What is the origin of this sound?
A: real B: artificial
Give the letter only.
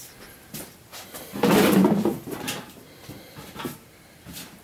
B